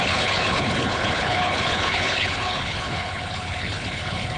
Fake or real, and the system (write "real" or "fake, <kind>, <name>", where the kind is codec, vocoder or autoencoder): fake, codec, HILCodec